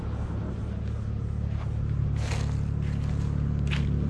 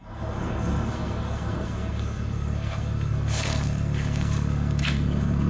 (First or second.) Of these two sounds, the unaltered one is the first